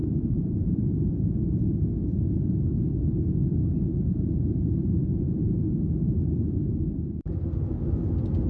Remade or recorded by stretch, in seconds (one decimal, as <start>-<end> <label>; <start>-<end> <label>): 0.0-1.6 remade; 1.6-3.9 recorded; 3.9-5.4 remade; 5.4-8.5 recorded